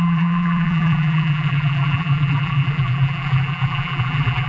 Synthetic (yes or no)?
yes